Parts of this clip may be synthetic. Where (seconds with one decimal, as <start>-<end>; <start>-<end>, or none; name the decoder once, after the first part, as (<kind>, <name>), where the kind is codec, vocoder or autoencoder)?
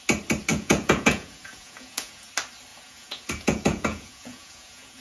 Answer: 0.5-2.3 (vocoder, Vocos); 2.7-5.0